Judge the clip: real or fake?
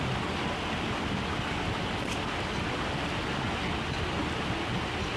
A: real